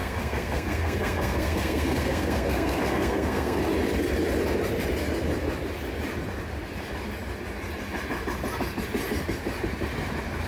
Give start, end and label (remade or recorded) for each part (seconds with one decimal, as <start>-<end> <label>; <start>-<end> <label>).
0.0-3.6 remade; 3.6-10.5 recorded